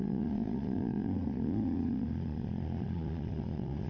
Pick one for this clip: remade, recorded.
remade